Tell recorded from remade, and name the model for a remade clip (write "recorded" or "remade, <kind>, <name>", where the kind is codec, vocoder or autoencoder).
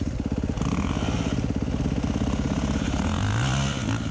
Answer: recorded